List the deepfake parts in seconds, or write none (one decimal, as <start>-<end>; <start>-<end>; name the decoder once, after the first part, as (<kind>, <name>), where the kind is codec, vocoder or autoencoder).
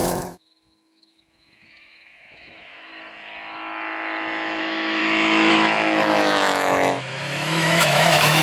0.0-2.9 (autoencoder, DAC-VAE); 4.6-5.0; 5.5-8.4